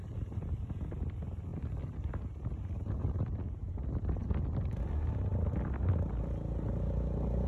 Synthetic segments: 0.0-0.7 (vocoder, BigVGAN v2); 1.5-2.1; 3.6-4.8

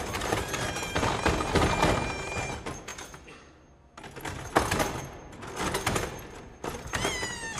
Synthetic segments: none

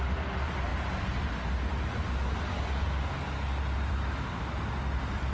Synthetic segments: none